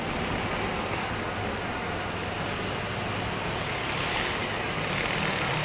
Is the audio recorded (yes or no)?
yes